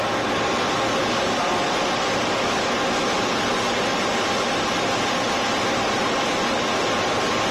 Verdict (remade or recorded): recorded